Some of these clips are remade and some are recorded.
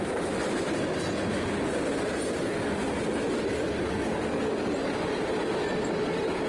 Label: recorded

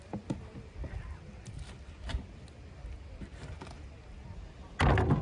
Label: recorded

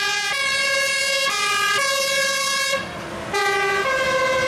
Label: recorded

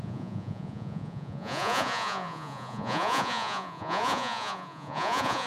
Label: remade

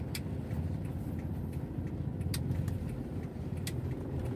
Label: recorded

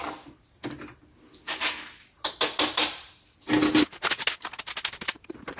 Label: recorded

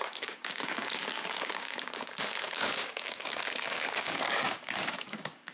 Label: remade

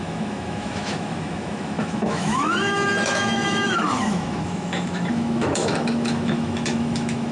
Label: remade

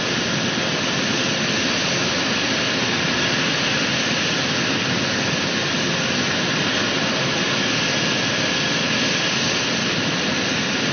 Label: recorded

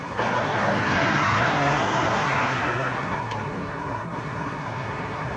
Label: remade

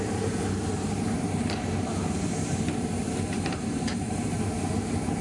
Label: remade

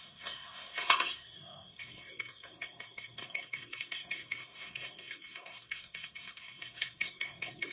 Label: remade